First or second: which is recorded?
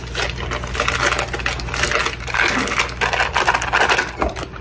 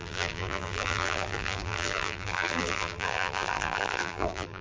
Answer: first